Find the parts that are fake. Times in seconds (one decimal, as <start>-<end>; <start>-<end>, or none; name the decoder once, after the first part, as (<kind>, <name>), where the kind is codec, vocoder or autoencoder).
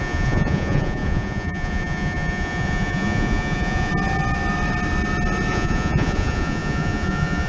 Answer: 0.0-3.9 (vocoder, Vocos); 5.5-7.5